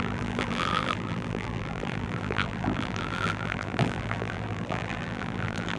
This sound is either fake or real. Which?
fake